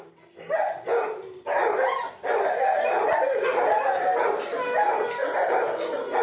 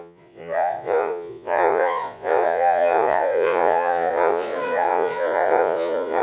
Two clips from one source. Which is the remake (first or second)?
second